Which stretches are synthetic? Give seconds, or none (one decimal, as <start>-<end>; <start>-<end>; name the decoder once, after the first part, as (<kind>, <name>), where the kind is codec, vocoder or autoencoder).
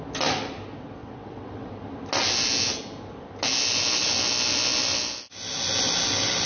1.0-1.7 (vocoder, WaveNeXt)